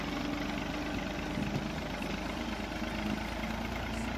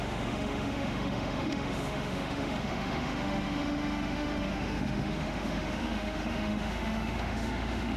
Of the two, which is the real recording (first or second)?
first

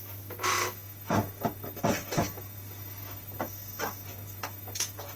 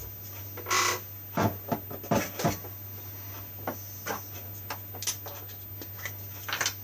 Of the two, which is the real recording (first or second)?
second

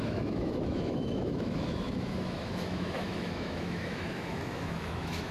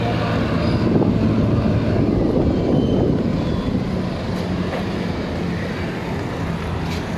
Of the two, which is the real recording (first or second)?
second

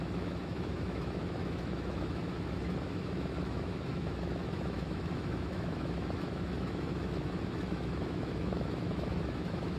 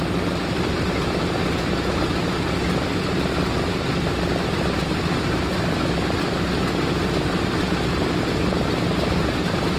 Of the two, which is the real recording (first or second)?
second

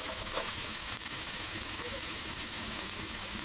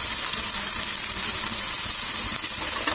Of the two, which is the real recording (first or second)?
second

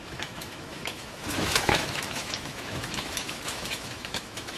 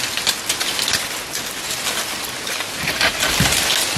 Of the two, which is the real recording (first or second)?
second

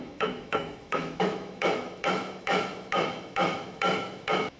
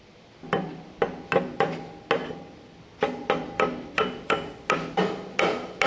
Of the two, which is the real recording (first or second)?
second